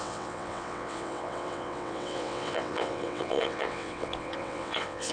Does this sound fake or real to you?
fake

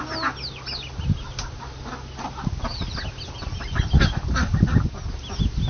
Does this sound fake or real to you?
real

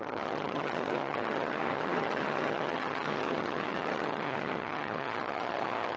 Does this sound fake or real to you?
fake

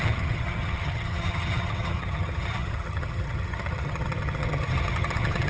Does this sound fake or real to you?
fake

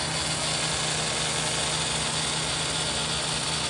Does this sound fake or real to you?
real